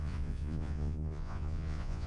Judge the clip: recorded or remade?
remade